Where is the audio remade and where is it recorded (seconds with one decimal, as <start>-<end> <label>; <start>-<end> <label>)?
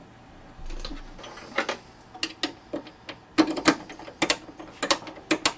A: 0.0-5.6 recorded